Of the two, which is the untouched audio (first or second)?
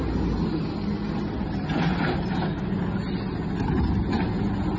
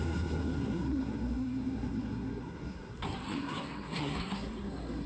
first